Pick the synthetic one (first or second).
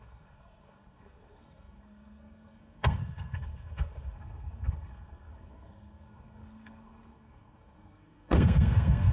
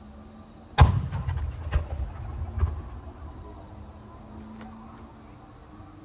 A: first